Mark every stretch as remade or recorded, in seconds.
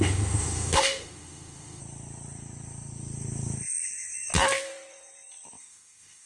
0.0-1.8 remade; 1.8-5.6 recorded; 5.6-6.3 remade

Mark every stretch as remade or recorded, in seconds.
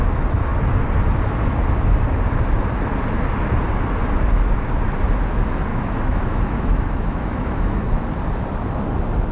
0.0-5.7 recorded; 5.7-8.0 remade; 8.0-9.3 recorded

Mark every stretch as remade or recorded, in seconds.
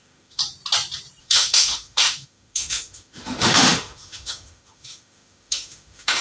0.0-0.4 remade; 0.4-1.2 recorded; 1.2-6.2 remade